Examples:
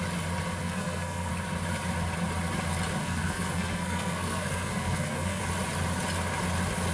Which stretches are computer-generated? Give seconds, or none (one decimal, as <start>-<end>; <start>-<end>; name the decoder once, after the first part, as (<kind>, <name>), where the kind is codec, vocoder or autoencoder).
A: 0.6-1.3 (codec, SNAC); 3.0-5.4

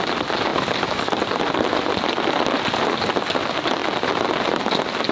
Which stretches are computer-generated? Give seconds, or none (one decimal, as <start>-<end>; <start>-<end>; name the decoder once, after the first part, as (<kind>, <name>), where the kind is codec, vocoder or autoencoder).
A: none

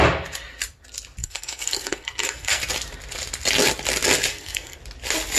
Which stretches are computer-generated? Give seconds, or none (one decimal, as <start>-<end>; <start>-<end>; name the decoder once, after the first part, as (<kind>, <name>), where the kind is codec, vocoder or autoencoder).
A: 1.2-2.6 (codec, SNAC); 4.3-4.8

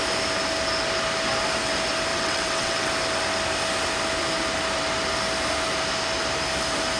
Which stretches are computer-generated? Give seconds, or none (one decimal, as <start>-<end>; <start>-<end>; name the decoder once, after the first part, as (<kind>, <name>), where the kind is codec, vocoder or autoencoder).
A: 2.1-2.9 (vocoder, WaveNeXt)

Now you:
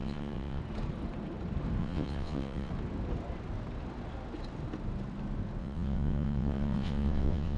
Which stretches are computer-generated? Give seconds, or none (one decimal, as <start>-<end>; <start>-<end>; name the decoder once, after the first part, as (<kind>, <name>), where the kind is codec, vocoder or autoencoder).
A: 0.0-0.6 (vocoder, WaveNeXt); 1.8-2.7; 5.6-7.6